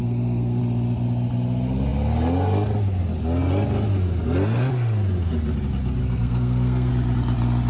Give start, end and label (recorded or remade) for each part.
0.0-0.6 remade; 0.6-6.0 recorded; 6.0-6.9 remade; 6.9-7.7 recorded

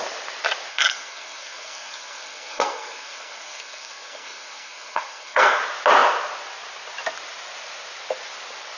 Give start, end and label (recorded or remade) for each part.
0.0-0.7 recorded; 0.7-5.6 remade; 5.6-8.8 recorded

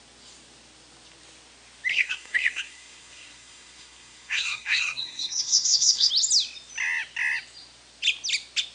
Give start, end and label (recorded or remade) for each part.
0.0-1.9 recorded; 1.9-6.1 remade; 6.1-8.7 recorded

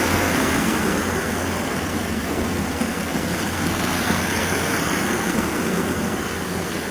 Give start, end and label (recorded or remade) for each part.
0.0-6.9 remade

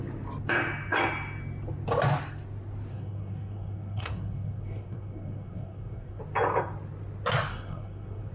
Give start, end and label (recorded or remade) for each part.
0.0-2.9 recorded; 2.9-6.2 remade; 6.2-7.5 recorded; 7.5-8.3 remade

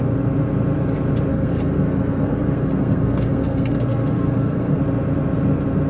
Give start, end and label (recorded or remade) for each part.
0.0-1.3 recorded; 1.3-4.8 remade; 4.8-5.9 recorded